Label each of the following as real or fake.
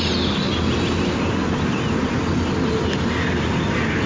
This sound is real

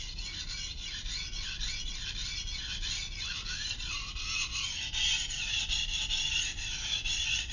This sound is real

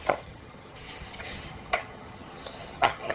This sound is fake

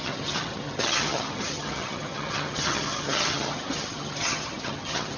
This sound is fake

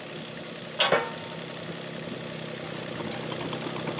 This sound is real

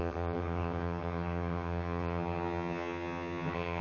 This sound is fake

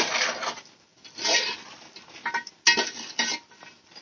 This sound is real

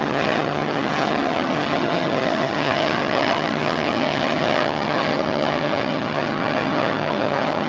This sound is fake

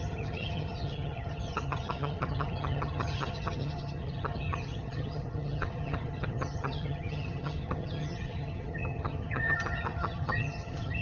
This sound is fake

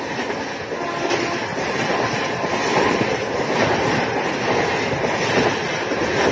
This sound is real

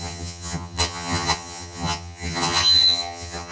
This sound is fake